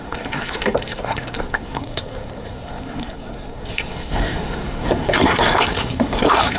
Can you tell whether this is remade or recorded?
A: remade